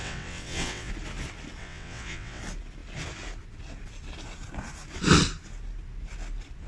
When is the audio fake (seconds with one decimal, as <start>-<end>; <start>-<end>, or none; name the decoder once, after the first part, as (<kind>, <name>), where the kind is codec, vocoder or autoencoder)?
0.0-0.9 (vocoder, WaveNeXt); 1.6-2.4